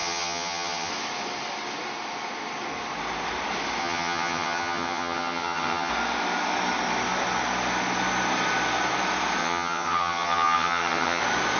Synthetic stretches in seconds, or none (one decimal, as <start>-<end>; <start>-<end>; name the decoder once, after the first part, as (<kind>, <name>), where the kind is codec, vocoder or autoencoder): 0.0-0.9 (vocoder, HiFi-GAN); 3.8-5.9; 9.4-11.2